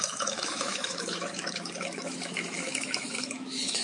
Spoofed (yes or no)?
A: yes